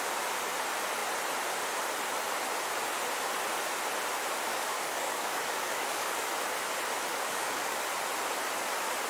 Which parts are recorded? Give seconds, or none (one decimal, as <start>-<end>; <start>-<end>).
0.0-4.5; 6.3-7.1; 7.8-9.1